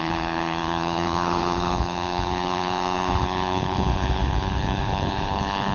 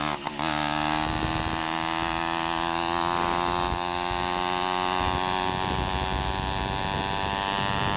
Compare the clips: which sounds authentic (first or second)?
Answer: second